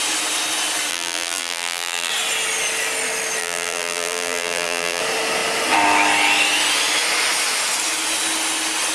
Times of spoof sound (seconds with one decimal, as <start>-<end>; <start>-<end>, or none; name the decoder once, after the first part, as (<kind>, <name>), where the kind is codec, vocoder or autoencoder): 0.9-2.1 (vocoder, BigVGAN v2); 3.4-5.0